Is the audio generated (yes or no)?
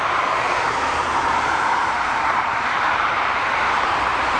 yes